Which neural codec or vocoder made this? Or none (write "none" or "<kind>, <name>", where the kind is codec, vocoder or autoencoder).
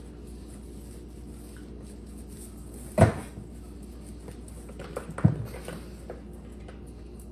none